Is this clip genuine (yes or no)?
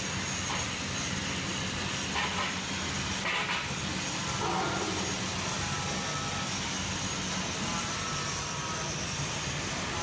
yes